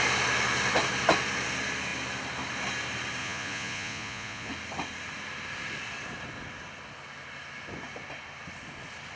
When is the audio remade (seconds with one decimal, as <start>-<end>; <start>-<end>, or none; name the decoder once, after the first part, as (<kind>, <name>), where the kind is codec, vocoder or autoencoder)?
3.2-4.5 (vocoder, Vocos)